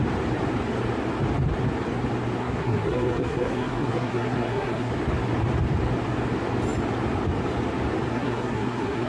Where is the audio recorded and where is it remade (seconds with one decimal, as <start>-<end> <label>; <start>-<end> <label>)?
0.0-2.4 recorded; 2.4-4.9 remade; 4.9-8.1 recorded; 8.1-9.1 remade